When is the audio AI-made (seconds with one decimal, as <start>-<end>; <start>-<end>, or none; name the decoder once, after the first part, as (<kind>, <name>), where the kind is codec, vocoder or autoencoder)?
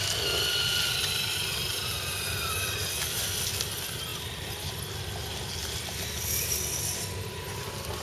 none